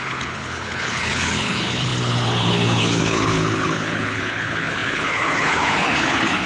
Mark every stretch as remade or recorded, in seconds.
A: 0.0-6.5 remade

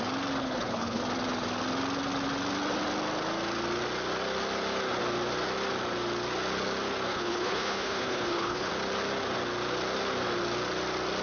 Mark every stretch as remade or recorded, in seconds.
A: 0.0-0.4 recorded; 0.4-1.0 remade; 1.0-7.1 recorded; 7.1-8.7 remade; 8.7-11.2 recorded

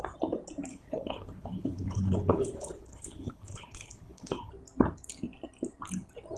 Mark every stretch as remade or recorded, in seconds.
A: 0.0-0.7 recorded; 0.7-4.5 remade; 4.5-6.4 recorded